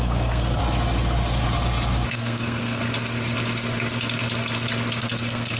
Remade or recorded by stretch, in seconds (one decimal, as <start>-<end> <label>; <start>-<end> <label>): 0.0-0.6 remade; 0.6-2.1 recorded; 2.1-2.8 remade; 2.8-5.0 recorded; 5.0-5.6 remade